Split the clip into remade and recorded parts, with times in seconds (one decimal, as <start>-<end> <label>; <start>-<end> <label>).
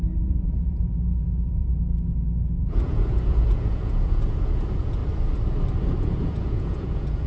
0.0-1.7 remade; 1.7-2.6 recorded; 2.6-5.0 remade; 5.0-6.0 recorded; 6.0-7.3 remade